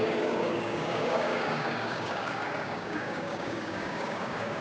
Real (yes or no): no